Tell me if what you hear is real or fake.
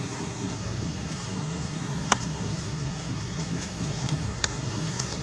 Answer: fake